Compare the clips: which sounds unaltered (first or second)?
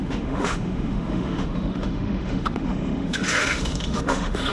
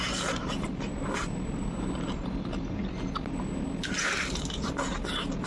second